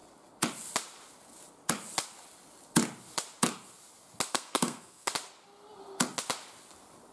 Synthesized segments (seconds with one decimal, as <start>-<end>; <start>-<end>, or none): 4.3-5.1

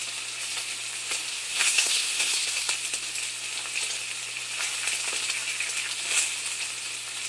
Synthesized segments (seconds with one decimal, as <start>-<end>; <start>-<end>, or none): 1.3-2.7